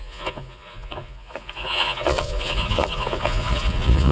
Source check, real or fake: fake